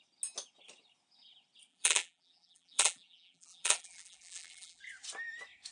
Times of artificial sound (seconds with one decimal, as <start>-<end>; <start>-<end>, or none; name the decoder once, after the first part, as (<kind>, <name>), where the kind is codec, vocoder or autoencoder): 1.7-4.8 (vocoder, BigVGAN v2)